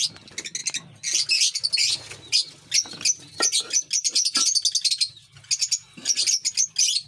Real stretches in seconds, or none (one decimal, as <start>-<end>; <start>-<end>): 0.0-7.1